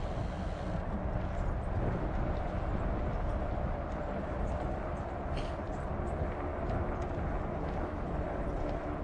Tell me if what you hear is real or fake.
real